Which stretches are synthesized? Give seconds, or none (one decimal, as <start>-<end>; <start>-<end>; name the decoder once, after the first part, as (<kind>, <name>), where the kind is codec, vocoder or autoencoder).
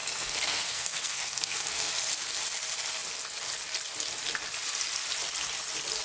0.0-1.9 (codec, SNAC)